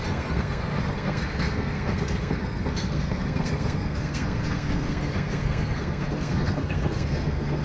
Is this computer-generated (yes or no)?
yes